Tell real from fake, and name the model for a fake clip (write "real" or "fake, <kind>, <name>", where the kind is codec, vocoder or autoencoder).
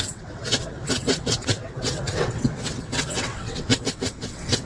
fake, vocoder, WaveNeXt